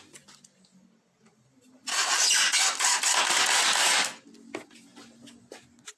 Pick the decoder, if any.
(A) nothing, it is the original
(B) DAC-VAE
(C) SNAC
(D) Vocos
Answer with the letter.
A